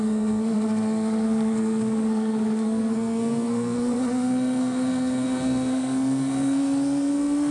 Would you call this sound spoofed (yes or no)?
yes